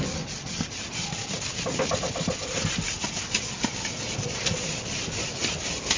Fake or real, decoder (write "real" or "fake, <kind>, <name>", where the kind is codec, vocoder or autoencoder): real